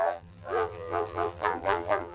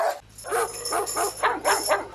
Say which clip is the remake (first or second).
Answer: first